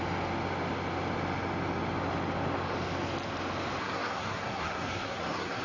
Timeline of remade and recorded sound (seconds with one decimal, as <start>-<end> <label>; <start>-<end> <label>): 0.0-3.8 recorded; 3.8-5.6 remade